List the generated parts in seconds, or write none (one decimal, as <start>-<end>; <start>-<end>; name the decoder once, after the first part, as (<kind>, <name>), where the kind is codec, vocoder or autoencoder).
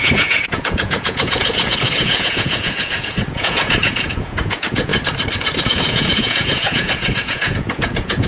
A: 0.0-4.9 (vocoder, Vocos); 5.6-8.3